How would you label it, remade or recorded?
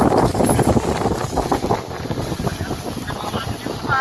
recorded